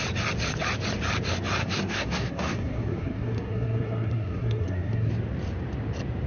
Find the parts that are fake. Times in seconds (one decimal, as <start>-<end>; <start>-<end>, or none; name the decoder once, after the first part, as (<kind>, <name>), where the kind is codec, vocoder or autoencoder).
1.6-5.1 (codec, SNAC)